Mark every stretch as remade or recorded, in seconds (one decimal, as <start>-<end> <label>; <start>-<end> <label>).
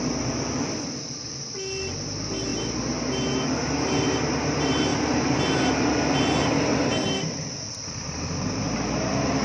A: 0.0-4.9 remade; 4.9-7.7 recorded; 7.7-9.4 remade